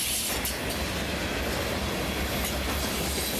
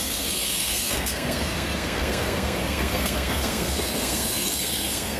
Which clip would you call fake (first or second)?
second